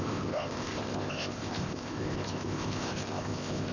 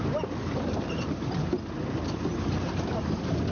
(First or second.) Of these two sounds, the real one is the second